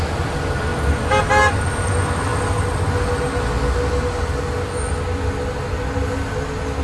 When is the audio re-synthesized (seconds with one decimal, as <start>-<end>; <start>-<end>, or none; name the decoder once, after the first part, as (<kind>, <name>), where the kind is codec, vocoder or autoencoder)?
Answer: none